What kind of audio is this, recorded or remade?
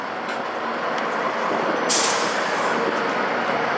recorded